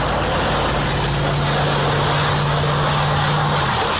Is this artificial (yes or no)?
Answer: no